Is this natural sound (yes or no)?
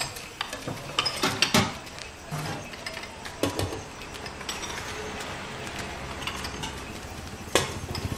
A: yes